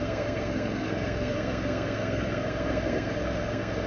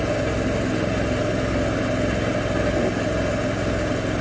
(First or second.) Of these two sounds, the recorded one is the second